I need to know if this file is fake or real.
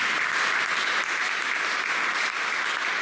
real